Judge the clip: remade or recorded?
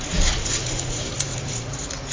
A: remade